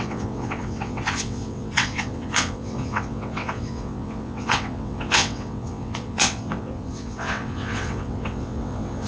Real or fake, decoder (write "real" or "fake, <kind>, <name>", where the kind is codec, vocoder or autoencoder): fake, vocoder, WaveNeXt